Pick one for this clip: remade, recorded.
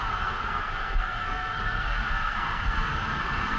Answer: remade